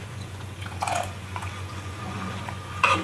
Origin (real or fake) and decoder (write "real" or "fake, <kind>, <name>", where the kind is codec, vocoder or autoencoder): fake, vocoder, Vocos